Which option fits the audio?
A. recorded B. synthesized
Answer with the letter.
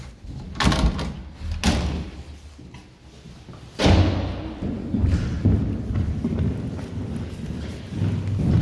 A